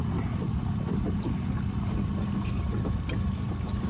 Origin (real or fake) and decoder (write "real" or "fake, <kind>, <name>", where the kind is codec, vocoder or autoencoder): real